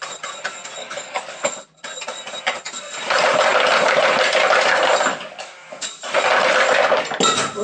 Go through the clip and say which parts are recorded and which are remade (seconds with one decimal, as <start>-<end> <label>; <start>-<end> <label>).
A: 0.0-0.8 recorded; 0.8-1.3 remade; 1.3-5.1 recorded; 5.1-5.9 remade; 5.9-7.6 recorded